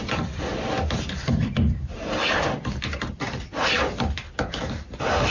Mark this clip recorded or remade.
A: recorded